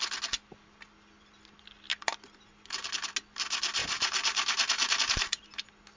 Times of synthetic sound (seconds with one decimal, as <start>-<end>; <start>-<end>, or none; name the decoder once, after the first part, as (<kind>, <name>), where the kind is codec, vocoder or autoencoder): 3.8-5.4 (vocoder, BigVGAN v2)